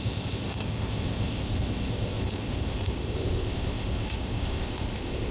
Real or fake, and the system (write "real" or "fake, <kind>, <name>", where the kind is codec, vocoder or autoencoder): fake, codec, ZipCodec